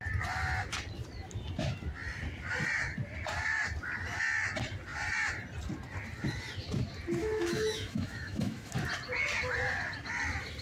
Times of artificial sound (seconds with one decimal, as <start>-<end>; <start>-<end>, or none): 7.2-8.7